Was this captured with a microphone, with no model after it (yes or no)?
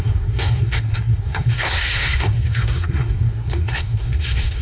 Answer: no